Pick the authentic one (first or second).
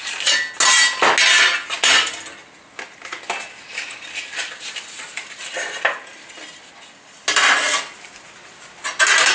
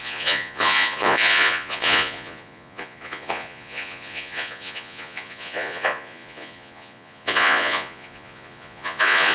first